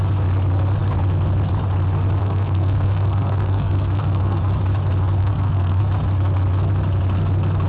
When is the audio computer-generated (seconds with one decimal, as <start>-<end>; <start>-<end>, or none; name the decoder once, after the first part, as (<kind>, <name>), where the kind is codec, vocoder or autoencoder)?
2.2-4.4 (codec, SNAC); 5.2-5.8